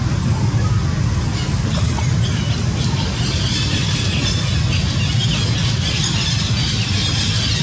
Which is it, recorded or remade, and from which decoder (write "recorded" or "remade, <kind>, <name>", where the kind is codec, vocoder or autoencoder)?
recorded